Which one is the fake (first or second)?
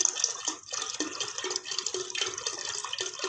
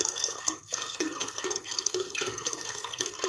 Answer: second